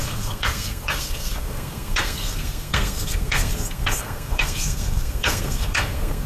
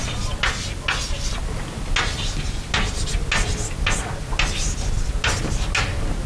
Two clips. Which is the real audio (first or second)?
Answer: second